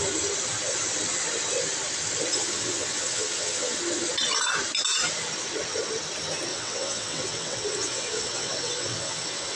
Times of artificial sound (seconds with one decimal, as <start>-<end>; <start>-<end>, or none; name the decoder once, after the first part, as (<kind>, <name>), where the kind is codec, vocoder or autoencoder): 2.3-3.8 (vocoder, WaveNeXt); 6.5-9.6